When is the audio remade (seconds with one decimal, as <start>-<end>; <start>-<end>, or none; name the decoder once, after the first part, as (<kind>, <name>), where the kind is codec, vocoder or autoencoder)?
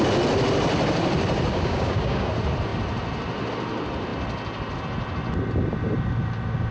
1.5-2.3 (codec, DAC)